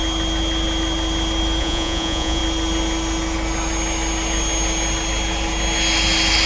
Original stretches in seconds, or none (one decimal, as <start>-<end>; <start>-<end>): 0.0-1.6; 2.4-6.5